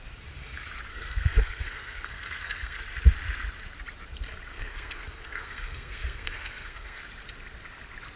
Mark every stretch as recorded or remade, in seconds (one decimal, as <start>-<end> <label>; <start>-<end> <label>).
0.0-0.9 recorded; 0.9-2.8 remade; 2.8-4.5 recorded; 4.5-7.0 remade; 7.0-8.2 recorded